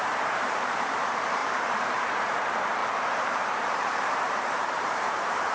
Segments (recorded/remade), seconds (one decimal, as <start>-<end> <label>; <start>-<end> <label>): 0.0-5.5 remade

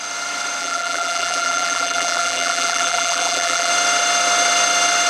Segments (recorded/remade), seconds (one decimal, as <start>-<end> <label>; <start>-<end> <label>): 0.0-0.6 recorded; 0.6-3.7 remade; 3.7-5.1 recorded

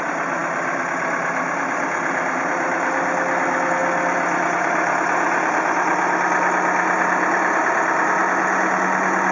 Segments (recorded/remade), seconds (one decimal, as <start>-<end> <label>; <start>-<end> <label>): 0.0-9.3 recorded

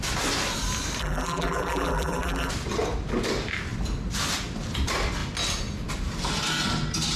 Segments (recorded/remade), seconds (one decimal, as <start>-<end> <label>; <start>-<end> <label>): 0.0-1.0 recorded; 1.0-2.5 remade; 2.5-7.2 recorded

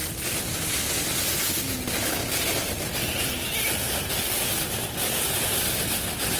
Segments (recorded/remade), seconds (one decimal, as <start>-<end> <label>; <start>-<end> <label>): 0.0-0.7 remade; 0.7-6.4 recorded

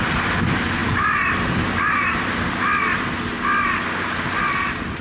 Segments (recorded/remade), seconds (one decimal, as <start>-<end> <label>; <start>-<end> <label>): 0.0-0.8 recorded; 0.8-2.8 remade; 2.8-5.0 recorded

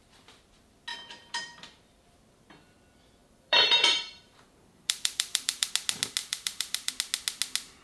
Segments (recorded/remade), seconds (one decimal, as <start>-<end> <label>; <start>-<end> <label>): 0.0-0.9 recorded; 0.9-2.1 remade; 2.1-3.2 recorded; 3.2-5.7 remade; 5.7-6.2 recorded; 6.2-6.9 remade; 6.9-7.8 recorded

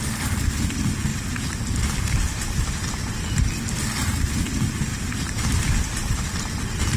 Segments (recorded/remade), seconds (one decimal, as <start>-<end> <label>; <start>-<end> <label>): 0.0-1.1 recorded; 1.1-3.1 remade; 3.1-4.9 recorded; 4.9-6.1 remade; 6.1-7.0 recorded